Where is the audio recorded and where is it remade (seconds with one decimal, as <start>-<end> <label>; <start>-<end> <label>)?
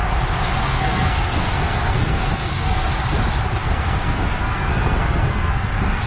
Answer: 0.0-0.6 recorded; 0.6-2.9 remade; 2.9-3.6 recorded; 3.6-6.1 remade